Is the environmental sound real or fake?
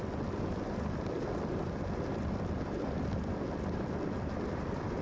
real